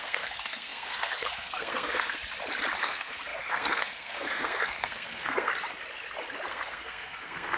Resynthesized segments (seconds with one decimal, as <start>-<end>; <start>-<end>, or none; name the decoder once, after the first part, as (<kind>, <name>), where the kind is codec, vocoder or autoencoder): 0.0-2.2 (codec, SNAC); 2.8-5.5; 6.5-7.6